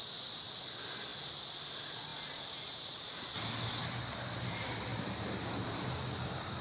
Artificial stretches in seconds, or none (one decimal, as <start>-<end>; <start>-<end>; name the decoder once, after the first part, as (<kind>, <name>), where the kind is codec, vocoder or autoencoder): none